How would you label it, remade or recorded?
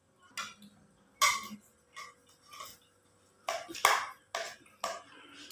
recorded